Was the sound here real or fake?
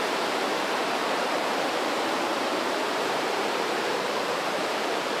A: fake